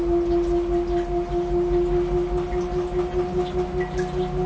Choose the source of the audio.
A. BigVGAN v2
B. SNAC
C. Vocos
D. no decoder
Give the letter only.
D